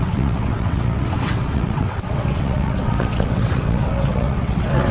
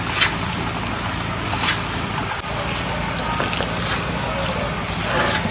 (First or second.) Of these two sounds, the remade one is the first